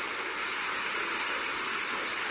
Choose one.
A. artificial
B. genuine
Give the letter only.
B